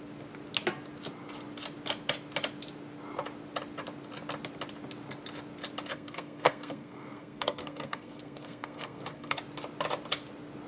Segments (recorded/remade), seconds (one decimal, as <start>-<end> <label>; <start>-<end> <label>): 0.0-5.9 recorded; 5.9-9.4 remade; 9.4-10.7 recorded